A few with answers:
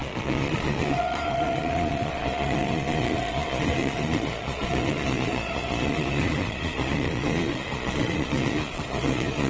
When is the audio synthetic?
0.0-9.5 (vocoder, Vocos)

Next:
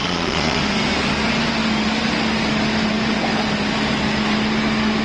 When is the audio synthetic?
0.0-0.6 (vocoder, Vocos)